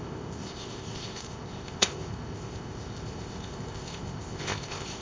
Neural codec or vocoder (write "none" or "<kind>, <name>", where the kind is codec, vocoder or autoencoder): codec, ZipCodec